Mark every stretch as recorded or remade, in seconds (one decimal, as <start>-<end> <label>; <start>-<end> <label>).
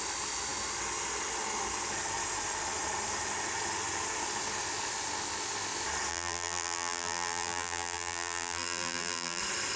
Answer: 0.0-6.1 recorded; 6.1-9.4 remade; 9.4-9.8 recorded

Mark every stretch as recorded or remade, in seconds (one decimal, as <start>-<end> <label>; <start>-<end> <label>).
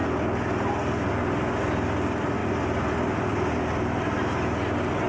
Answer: 0.0-5.1 recorded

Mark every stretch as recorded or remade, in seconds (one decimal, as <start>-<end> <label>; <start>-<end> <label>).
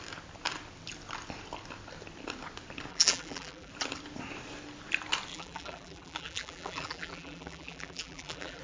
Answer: 0.0-2.9 recorded; 2.9-3.7 remade; 3.7-5.3 recorded; 5.3-8.6 remade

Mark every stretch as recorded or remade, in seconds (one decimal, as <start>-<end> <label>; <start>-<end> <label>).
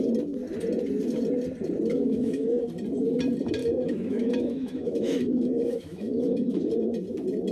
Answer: 0.0-1.9 recorded; 1.9-2.6 remade; 2.6-3.6 recorded; 3.6-6.6 remade; 6.6-7.5 recorded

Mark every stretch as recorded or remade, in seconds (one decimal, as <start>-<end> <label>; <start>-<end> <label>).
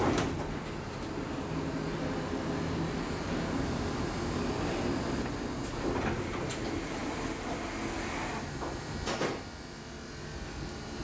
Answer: 0.0-11.0 recorded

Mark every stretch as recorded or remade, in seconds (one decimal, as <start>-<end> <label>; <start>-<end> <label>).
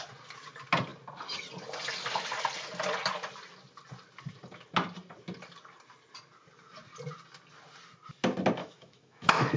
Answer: 0.0-8.6 recorded; 8.6-9.6 remade